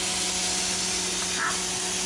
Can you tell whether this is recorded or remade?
recorded